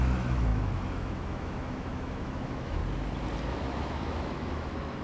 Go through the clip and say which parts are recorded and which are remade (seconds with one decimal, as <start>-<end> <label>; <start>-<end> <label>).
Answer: 0.0-2.8 remade; 2.8-3.5 recorded; 3.5-5.0 remade